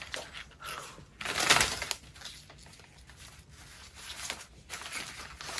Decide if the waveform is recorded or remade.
recorded